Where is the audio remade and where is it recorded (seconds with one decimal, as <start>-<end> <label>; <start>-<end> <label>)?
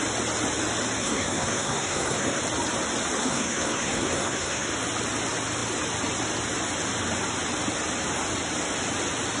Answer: 0.0-1.0 recorded; 1.0-2.4 remade; 2.4-3.2 recorded; 3.2-4.7 remade; 4.7-9.4 recorded